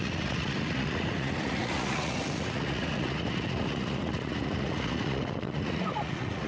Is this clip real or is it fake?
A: fake